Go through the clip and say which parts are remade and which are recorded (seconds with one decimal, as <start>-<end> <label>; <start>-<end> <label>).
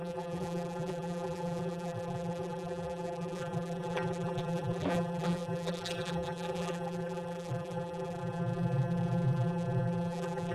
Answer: 0.0-10.5 remade